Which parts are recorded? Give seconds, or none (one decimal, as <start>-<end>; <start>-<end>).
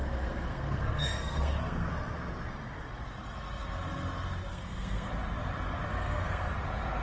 1.9-4.5; 5.1-5.9; 6.5-7.0